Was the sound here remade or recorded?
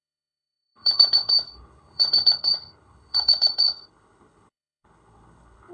remade